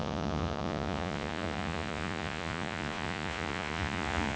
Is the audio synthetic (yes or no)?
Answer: yes